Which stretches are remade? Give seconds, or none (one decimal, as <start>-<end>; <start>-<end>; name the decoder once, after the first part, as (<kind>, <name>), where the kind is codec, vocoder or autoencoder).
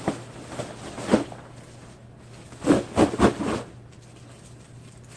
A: none